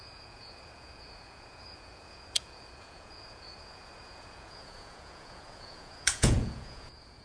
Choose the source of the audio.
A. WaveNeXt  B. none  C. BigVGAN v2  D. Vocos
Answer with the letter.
D